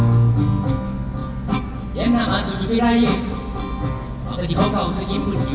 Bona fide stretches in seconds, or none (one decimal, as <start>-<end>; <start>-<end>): 0.0-5.5